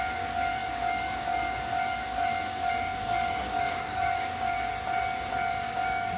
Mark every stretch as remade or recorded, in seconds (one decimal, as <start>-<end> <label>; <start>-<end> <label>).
0.0-4.7 remade; 4.7-5.5 recorded; 5.5-6.2 remade